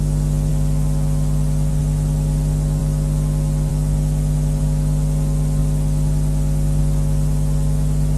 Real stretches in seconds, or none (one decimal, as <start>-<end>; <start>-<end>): 0.0-8.2